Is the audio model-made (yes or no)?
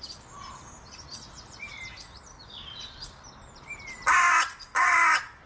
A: no